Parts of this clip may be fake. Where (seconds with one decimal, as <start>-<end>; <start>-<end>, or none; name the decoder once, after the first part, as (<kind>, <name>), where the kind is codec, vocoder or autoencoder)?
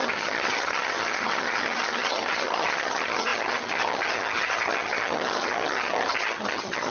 0.0-6.9 (vocoder, HiFi-GAN)